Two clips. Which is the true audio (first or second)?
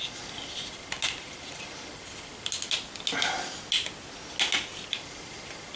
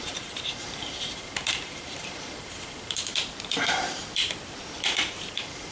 first